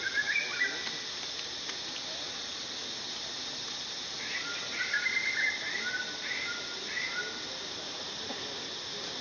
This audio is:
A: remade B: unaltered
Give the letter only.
B